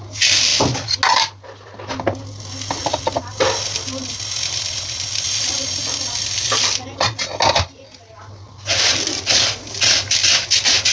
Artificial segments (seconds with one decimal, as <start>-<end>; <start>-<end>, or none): none